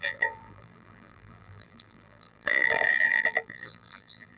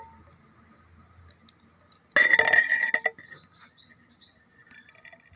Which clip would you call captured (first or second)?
second